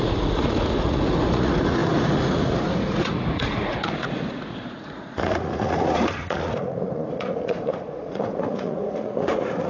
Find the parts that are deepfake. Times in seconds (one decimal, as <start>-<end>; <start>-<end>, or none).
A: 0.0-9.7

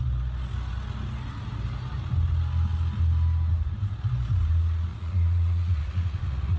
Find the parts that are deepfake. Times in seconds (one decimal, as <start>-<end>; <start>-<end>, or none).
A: 4.9-6.6

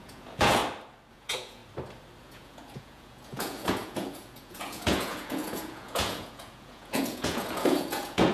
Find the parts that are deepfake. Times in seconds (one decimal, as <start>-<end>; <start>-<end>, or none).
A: 0.0-0.6; 1.1-1.6; 2.2-8.3

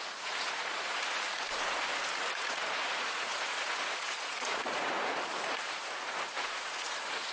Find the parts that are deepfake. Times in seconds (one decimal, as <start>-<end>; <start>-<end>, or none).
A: 0.0-7.3

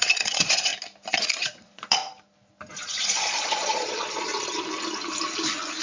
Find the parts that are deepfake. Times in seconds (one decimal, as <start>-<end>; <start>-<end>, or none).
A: 0.0-0.7; 1.2-2.0; 2.7-4.3